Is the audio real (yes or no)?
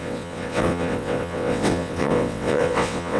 no